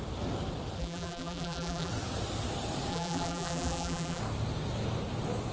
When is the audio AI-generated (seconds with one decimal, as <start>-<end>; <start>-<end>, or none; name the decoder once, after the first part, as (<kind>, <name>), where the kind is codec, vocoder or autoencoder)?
0.8-1.9 (vocoder, BigVGAN v2); 2.9-4.2